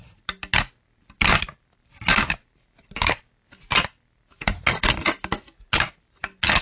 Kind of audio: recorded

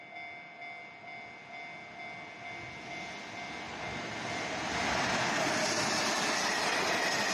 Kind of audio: recorded